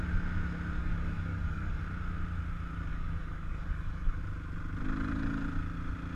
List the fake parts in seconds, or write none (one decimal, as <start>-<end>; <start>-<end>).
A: 0.8-1.8; 2.9-4.2